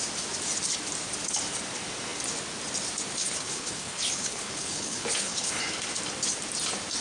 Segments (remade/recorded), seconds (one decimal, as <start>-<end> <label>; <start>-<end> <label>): 0.0-3.2 recorded; 3.2-5.6 remade; 5.6-7.0 recorded